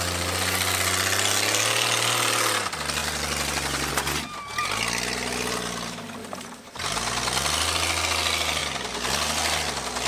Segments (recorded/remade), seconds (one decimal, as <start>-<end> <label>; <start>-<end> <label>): 0.0-3.0 recorded; 3.0-3.9 remade; 3.9-6.2 recorded; 6.2-6.8 remade; 6.8-10.1 recorded